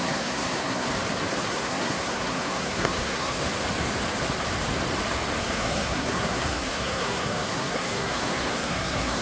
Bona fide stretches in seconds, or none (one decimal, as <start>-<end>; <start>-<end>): 0.9-1.5; 3.4-5.4